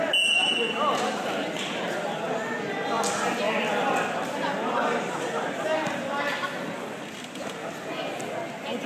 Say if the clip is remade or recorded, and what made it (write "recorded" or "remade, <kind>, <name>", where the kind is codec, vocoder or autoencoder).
recorded